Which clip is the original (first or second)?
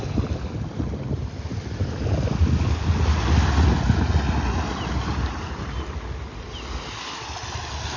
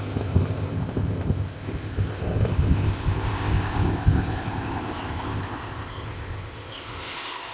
first